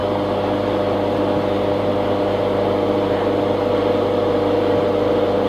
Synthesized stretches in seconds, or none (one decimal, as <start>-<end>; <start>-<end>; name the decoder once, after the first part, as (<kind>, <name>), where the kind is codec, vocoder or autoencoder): none